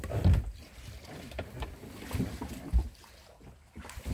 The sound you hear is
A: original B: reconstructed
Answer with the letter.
A